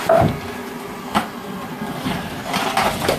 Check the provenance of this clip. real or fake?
real